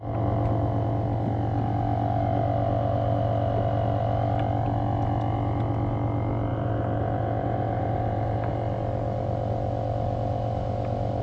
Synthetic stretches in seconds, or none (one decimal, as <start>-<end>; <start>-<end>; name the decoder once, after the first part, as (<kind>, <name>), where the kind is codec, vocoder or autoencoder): 6.5-8.5 (vocoder, BigVGAN v2)